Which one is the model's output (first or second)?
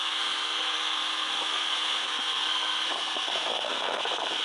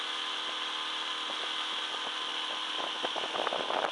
first